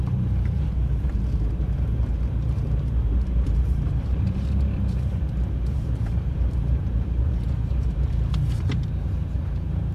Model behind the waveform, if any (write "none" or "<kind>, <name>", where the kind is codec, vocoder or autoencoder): vocoder, BigVGAN v2